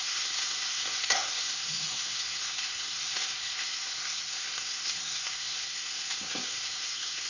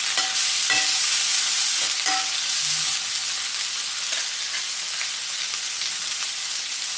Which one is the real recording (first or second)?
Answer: second